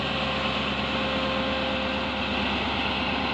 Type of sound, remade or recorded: recorded